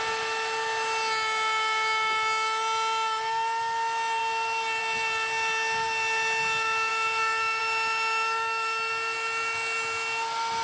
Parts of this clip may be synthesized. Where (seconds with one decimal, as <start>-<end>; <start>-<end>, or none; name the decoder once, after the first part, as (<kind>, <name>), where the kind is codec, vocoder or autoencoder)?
none